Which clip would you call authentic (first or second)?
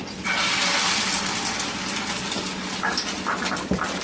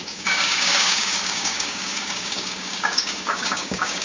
first